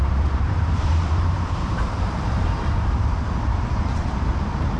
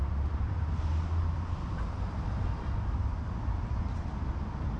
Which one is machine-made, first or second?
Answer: first